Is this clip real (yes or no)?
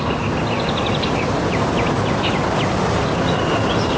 yes